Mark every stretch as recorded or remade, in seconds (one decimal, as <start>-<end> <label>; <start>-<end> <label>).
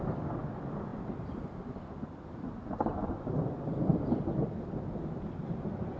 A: 0.0-6.0 recorded